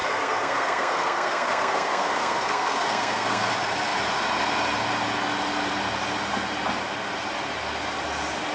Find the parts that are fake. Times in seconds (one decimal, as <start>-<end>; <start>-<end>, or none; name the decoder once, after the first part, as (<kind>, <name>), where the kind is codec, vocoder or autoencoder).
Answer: 0.0-3.5 (codec, SNAC)